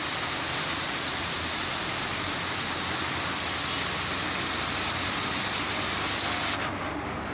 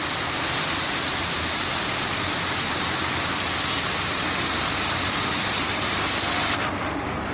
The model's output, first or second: second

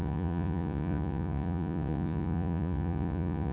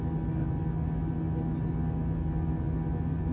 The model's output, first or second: first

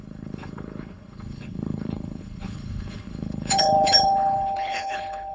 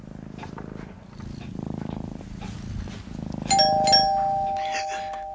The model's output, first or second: first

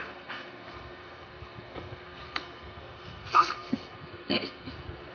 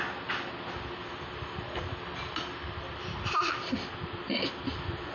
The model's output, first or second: first